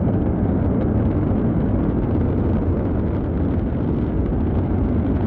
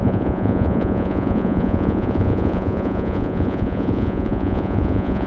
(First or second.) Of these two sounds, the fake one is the second